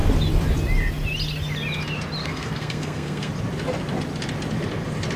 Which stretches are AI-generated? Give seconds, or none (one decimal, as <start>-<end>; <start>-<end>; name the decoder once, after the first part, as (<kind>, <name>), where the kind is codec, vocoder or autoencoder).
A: 2.2-3.3 (codec, SNAC)